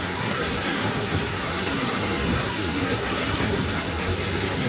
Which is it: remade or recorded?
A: remade